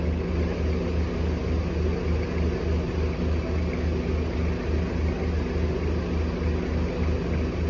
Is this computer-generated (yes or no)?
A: no